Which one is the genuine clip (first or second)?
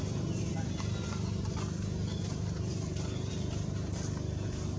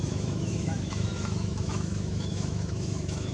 first